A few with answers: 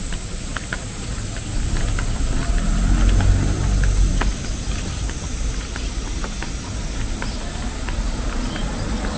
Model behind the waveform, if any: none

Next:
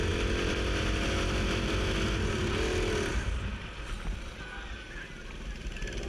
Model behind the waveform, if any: none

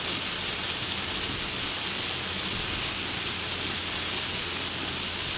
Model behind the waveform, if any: none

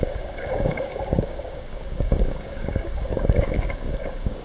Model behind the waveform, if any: codec, DAC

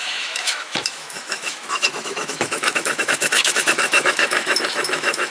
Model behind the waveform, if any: autoencoder, DAC-VAE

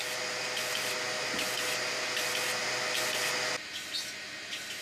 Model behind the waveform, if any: none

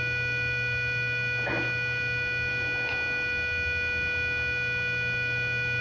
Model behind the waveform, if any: none